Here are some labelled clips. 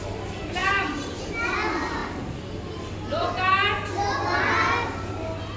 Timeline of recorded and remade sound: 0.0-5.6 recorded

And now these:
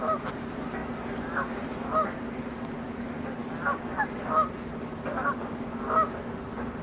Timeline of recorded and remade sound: 0.0-6.8 recorded

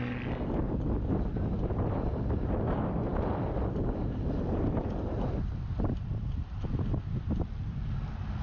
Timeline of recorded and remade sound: 0.0-8.4 recorded

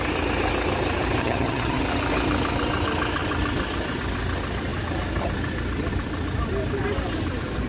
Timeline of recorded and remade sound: 0.0-1.2 recorded; 1.2-1.8 remade; 1.8-7.7 recorded

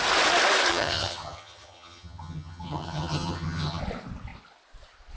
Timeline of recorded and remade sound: 0.0-0.7 recorded; 0.7-3.8 remade; 3.8-5.2 recorded

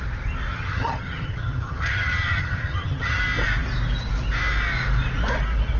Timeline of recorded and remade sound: 0.0-0.5 recorded; 0.5-3.2 remade; 3.2-5.8 recorded

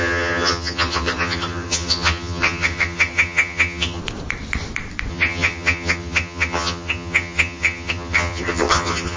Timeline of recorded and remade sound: 0.0-4.0 remade; 4.0-5.1 recorded; 5.1-9.2 remade